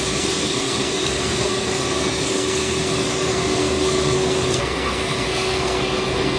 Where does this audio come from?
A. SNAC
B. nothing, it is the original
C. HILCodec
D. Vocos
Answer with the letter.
A